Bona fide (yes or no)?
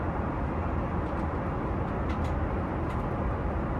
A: yes